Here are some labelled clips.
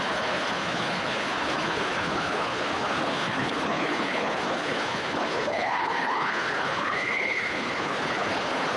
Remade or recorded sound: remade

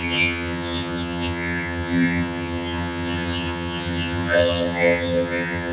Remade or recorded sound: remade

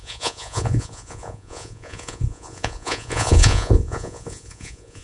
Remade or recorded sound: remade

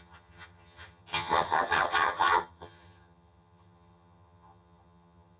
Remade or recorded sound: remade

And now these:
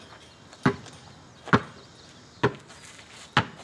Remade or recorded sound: recorded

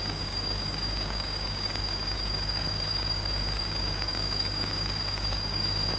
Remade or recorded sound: remade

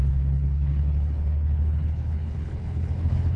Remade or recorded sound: remade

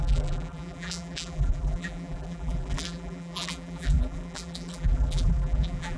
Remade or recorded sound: remade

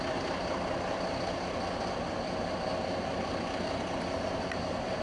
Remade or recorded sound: recorded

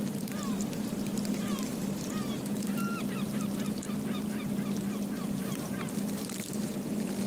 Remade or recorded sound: remade